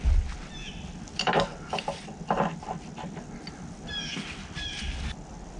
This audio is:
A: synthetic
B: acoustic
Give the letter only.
B